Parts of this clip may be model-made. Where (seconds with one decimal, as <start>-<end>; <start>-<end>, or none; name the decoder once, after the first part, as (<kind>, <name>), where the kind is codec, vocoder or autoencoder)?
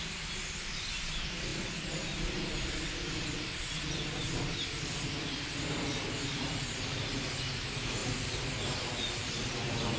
none